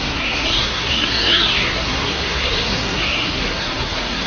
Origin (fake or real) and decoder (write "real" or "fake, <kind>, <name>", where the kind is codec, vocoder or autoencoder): fake, codec, SNAC